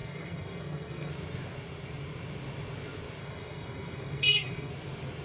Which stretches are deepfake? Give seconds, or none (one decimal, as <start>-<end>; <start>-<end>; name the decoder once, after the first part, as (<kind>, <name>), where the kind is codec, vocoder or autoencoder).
0.0-1.1 (codec, SNAC); 3.2-4.7